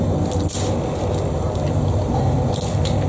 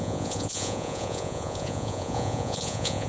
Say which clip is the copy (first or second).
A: second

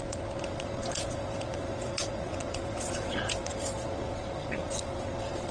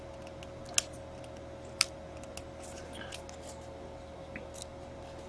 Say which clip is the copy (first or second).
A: first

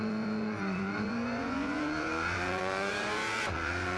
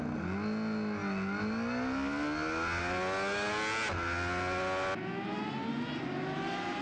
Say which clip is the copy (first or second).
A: first